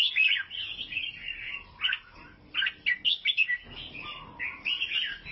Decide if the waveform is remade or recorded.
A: recorded